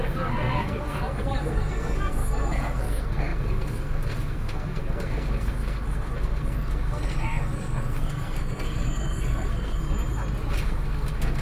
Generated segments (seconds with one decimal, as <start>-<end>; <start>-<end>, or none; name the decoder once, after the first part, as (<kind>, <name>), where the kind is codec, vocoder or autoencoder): 0.0-9.8 (codec, SNAC); 10.5-11.4